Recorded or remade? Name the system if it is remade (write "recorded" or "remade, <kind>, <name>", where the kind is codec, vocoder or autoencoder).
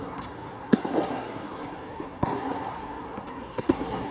remade, codec, SNAC